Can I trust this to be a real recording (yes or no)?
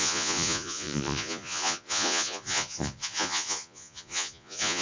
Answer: no